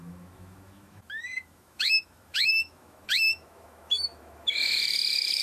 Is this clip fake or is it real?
fake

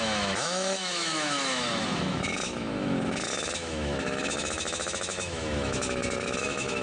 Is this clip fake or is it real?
fake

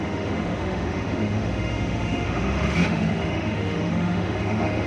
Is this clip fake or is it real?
fake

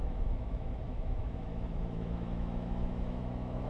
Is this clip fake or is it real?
fake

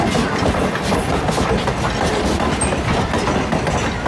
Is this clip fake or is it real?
real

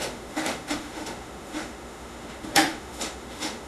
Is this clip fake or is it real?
fake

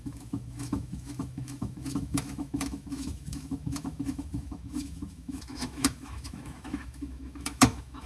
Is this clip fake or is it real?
fake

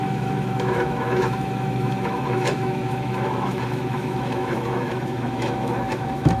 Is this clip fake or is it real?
fake